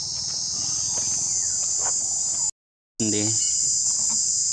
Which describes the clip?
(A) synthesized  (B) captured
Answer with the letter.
B